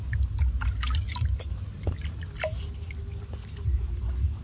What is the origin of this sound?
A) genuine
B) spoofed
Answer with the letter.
A